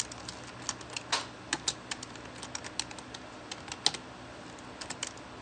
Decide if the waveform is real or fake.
real